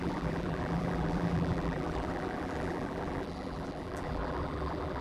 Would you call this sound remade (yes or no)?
yes